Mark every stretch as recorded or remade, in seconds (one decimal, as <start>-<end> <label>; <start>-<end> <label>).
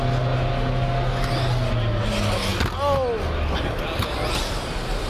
0.0-5.1 recorded